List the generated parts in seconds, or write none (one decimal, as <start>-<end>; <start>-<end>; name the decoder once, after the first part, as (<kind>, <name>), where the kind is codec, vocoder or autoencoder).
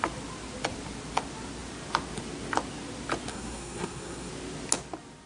3.3-4.3 (codec, SNAC)